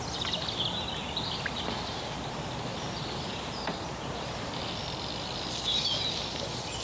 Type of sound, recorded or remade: remade